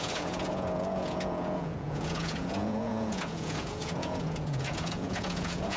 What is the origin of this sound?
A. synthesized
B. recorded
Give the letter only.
A